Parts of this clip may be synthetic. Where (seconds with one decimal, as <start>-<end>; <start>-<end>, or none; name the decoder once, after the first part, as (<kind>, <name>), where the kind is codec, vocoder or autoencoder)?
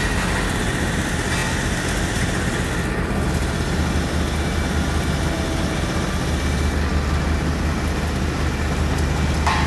none